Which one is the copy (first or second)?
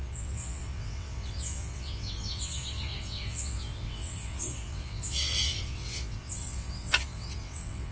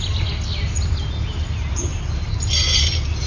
first